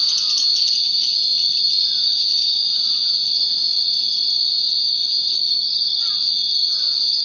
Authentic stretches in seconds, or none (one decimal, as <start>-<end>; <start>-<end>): 0.0-5.4; 6.0-7.2